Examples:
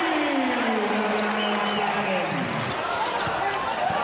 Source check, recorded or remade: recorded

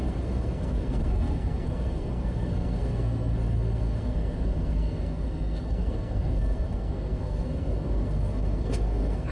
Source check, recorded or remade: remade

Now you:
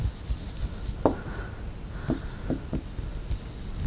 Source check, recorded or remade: recorded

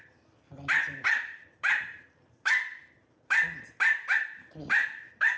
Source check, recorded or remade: remade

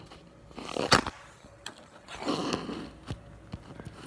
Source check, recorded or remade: recorded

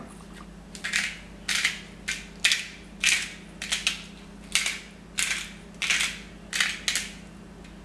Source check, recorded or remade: recorded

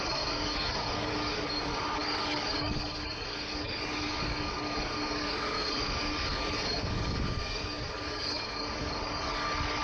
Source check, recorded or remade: remade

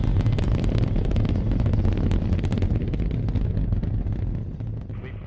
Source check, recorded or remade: recorded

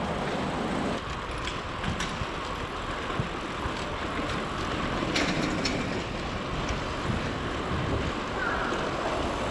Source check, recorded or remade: recorded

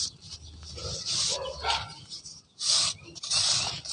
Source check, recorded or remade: recorded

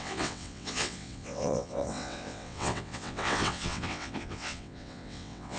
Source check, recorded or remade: remade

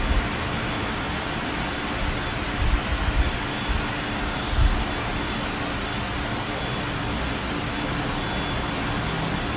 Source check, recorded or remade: recorded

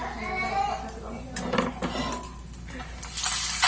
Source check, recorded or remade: recorded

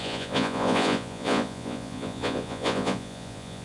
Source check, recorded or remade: remade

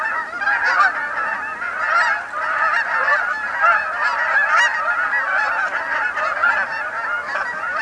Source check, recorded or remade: recorded